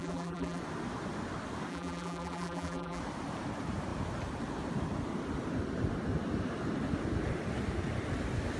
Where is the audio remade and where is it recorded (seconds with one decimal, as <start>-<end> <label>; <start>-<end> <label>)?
0.0-0.6 remade; 0.6-1.7 recorded; 1.7-3.0 remade; 3.0-8.6 recorded